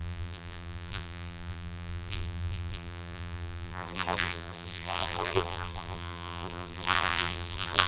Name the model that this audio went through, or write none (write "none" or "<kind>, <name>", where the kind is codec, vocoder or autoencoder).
vocoder, BigVGAN v2